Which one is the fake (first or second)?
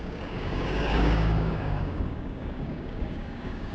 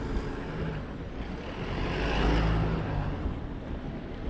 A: first